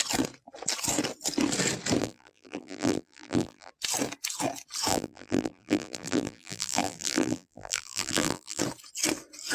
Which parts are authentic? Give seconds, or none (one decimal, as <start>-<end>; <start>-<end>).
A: 0.0-2.0; 3.7-4.9; 8.6-9.5